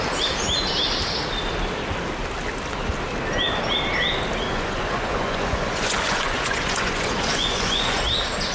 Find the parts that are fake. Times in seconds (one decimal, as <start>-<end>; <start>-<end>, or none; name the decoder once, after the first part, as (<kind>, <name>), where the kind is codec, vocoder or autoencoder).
4.5-8.0 (vocoder, Vocos)